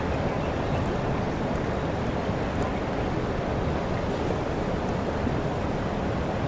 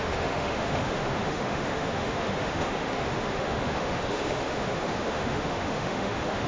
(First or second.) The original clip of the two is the first